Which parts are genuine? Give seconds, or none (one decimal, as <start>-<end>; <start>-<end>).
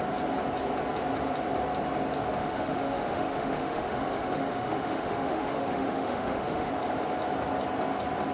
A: 0.0-2.4; 6.7-8.3